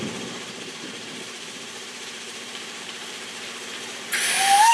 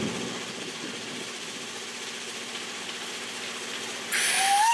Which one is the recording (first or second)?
second